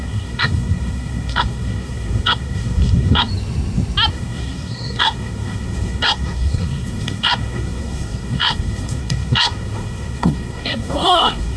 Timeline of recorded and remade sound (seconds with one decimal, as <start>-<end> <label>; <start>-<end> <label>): 0.0-3.3 remade; 3.3-4.1 recorded; 4.1-11.6 remade